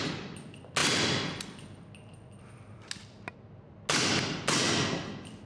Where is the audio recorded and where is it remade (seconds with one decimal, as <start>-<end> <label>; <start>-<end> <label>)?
0.0-5.5 recorded